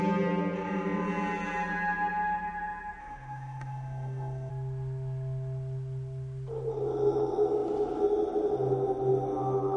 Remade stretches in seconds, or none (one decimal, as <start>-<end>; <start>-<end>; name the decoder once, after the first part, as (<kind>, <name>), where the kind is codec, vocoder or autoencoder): 3.0-4.5 (autoencoder, DAC-VAE)